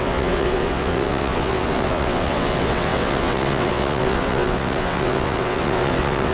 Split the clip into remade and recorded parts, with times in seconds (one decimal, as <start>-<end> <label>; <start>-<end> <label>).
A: 0.0-6.3 remade

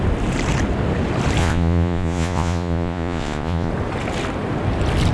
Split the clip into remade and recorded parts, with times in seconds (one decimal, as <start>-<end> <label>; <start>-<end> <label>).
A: 0.0-1.4 recorded; 1.4-3.7 remade; 3.7-5.1 recorded

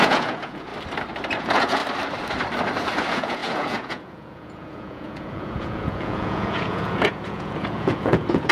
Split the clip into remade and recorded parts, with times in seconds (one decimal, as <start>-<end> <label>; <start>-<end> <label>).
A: 0.0-0.7 remade; 0.7-1.4 recorded; 1.4-1.8 remade; 1.8-3.0 recorded; 3.0-8.5 remade

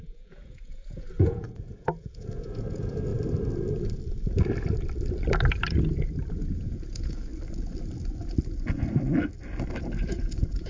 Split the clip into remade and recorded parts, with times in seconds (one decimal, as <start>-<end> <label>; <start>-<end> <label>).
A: 0.0-3.1 remade; 3.1-6.3 recorded; 6.3-7.3 remade; 7.3-10.1 recorded; 10.1-10.7 remade

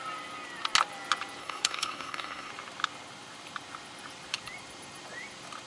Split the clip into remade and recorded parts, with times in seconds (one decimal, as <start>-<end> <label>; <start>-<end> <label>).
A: 0.0-1.4 recorded; 1.4-2.5 remade; 2.5-5.7 recorded